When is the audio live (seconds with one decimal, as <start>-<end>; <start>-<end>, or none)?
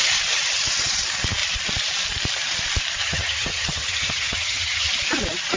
0.0-3.0; 4.9-5.6